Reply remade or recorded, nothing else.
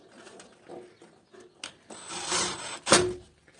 recorded